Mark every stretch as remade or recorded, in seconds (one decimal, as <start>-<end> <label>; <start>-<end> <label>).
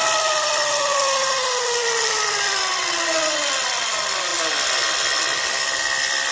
0.0-4.3 remade; 4.3-5.2 recorded; 5.2-6.3 remade